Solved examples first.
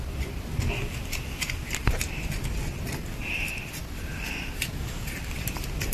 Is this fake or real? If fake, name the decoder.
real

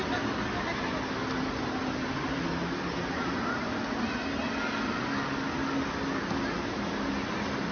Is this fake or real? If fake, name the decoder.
real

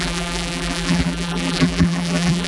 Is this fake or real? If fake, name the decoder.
fake, vocoder, BigVGAN v2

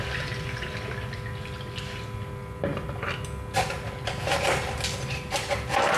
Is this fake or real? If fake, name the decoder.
real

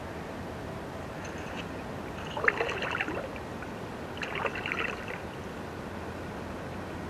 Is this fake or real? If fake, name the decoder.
real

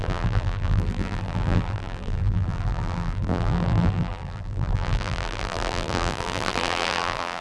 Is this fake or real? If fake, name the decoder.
fake, vocoder, BigVGAN v2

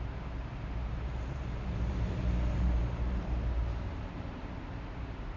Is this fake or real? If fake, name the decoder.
fake, vocoder, BigVGAN v2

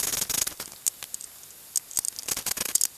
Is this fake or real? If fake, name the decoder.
real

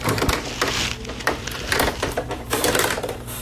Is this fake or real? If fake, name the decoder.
fake, vocoder, BigVGAN v2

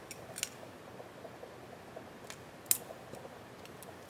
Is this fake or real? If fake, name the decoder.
real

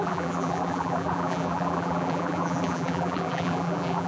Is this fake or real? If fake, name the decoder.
fake, vocoder, BigVGAN v2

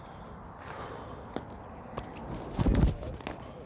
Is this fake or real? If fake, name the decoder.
real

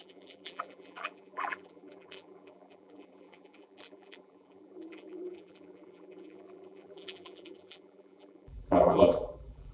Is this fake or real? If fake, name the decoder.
fake, vocoder, BigVGAN v2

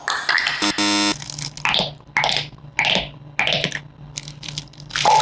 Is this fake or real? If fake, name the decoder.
real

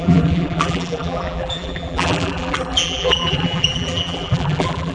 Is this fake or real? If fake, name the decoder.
fake, vocoder, BigVGAN v2